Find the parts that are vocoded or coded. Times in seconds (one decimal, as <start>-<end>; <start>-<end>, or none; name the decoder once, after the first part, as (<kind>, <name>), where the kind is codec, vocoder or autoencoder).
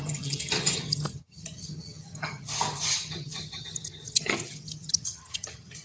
0.0-5.8 (vocoder, HiFi-GAN)